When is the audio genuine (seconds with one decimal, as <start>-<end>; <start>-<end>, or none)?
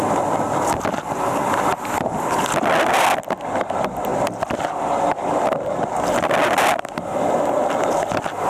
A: 0.0-8.5